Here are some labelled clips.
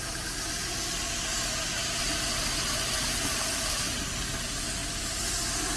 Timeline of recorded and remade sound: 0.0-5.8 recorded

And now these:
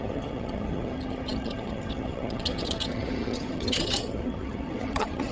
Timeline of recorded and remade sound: 0.0-5.3 remade

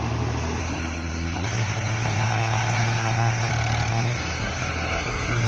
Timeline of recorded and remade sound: 0.0-0.6 recorded; 0.6-3.5 remade; 3.5-3.9 recorded; 3.9-5.5 remade

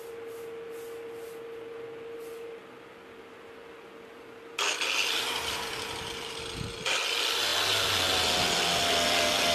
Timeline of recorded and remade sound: 0.0-9.5 recorded

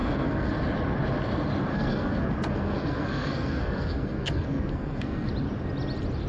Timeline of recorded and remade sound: 0.0-0.5 remade; 0.5-1.7 recorded; 1.7-5.3 remade; 5.3-6.3 recorded

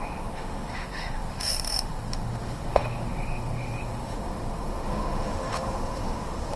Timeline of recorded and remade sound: 0.0-6.6 remade